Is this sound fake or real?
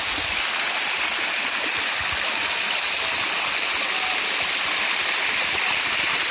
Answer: real